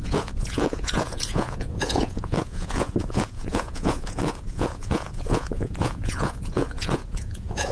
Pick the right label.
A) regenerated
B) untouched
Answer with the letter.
A